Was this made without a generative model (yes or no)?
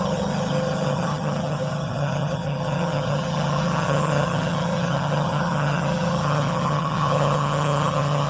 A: no